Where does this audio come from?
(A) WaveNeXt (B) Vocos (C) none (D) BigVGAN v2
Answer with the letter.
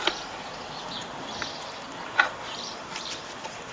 C